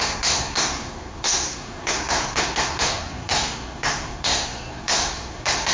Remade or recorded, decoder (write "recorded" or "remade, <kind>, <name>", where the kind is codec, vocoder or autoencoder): remade, codec, SNAC